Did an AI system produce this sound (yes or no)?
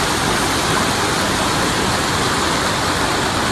no